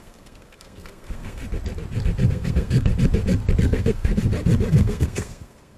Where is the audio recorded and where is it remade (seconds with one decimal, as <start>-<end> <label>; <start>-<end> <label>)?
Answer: 0.0-1.4 remade; 1.4-2.3 recorded; 2.3-2.9 remade; 2.9-3.6 recorded; 3.6-4.1 remade; 4.1-4.7 recorded; 4.7-5.8 remade